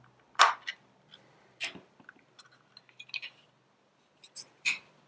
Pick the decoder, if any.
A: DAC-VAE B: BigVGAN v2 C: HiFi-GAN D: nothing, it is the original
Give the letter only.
D